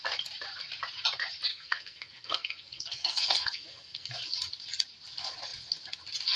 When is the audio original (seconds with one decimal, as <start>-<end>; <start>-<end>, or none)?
0.0-1.5; 4.1-6.4